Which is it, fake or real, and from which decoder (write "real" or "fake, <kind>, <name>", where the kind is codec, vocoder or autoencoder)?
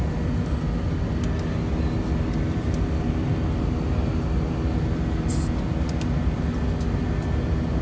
real